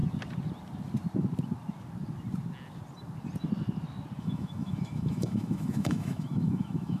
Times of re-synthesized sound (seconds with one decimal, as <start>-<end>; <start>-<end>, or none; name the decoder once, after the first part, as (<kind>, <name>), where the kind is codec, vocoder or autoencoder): 4.2-7.0 (autoencoder, DAC-VAE)